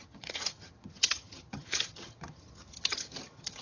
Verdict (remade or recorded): remade